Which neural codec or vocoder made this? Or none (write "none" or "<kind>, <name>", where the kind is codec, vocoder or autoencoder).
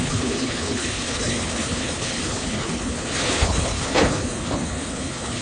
codec, HILCodec